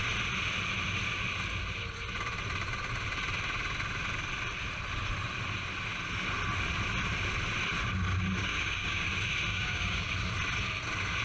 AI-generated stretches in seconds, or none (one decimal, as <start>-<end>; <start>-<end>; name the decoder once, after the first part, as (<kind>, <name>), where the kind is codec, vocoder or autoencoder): 8.4-9.1 (codec, DAC); 9.5-10.1